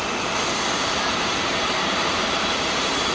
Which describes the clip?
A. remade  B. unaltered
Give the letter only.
A